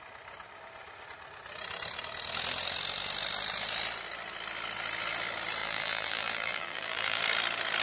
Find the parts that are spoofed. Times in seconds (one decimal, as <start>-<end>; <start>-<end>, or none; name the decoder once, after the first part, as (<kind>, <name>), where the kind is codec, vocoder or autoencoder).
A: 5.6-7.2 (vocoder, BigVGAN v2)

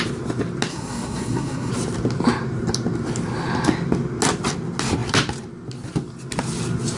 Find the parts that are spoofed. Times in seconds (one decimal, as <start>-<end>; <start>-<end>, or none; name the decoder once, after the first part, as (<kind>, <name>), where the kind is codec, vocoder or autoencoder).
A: 0.7-1.7 (codec, SNAC)

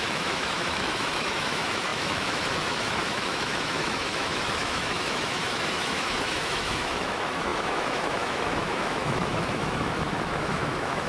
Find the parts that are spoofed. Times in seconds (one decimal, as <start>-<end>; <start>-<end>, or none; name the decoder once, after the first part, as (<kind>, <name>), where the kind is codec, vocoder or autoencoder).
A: 0.0-11.1 (autoencoder, DAC-VAE)

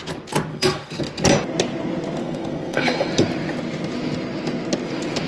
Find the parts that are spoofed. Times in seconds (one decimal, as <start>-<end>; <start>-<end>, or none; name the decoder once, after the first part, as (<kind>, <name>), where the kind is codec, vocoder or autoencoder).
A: 0.5-1.0 (codec, SNAC); 2.2-3.1

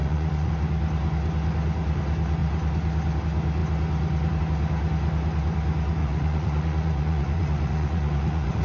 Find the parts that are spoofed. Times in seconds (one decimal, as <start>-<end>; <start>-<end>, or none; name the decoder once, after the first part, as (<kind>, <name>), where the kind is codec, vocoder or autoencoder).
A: 0.0-0.5 (vocoder, Vocos); 6.0-8.6